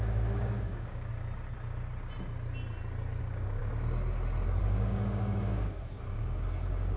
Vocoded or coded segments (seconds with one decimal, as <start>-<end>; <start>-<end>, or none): 0.0-1.1; 3.2-3.6; 4.6-7.0